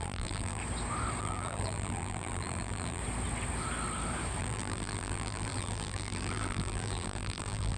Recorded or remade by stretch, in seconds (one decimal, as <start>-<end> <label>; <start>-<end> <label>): 0.0-0.6 remade; 0.6-1.2 recorded; 1.2-3.0 remade; 3.0-4.4 recorded; 4.4-7.8 remade